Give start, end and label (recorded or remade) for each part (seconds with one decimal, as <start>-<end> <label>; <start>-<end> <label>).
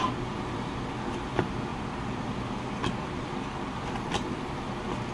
0.0-5.1 remade